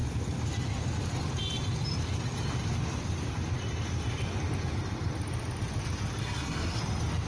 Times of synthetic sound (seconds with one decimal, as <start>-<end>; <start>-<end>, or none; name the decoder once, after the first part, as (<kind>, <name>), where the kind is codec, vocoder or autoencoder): 6.2-6.8 (codec, SNAC)